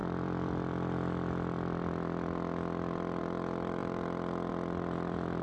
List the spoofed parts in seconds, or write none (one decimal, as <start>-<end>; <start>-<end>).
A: 0.0-5.4